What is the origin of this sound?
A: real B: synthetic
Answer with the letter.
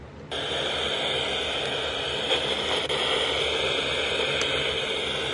A